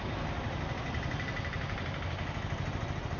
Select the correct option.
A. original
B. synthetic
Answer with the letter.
A